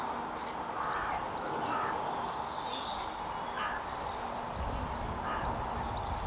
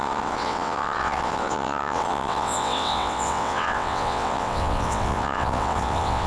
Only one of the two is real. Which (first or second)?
first